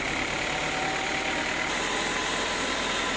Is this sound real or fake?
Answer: real